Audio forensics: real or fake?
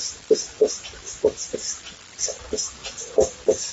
real